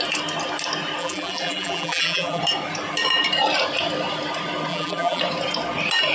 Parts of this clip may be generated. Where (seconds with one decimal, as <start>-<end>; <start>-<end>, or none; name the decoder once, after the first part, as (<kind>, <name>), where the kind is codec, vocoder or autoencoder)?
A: 1.0-2.4 (vocoder, BigVGAN v2); 4.7-5.2